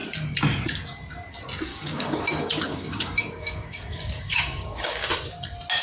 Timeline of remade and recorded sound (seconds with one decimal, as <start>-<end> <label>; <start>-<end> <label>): 0.0-1.7 recorded; 1.7-5.1 remade; 5.1-5.8 recorded